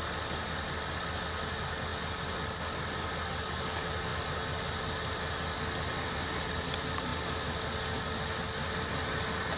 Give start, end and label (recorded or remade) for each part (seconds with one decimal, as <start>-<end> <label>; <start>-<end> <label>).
0.0-9.6 recorded